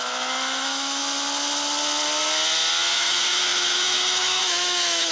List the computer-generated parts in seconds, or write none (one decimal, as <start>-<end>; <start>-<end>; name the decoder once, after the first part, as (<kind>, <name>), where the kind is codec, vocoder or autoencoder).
0.0-1.0 (autoencoder, DAC-VAE); 2.9-5.1

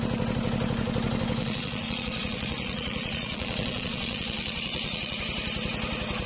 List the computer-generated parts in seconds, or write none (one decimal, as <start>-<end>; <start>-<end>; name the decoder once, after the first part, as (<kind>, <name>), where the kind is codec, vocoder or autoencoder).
1.4-5.2 (vocoder, Vocos)

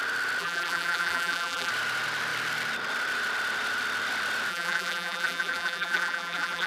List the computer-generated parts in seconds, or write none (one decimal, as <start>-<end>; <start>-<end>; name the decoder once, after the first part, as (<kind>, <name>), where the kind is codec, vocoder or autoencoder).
0.4-1.7 (vocoder, BigVGAN v2); 4.5-6.7